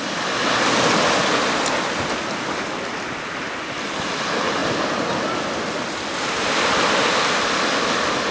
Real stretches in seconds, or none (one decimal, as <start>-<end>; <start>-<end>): 0.0-8.3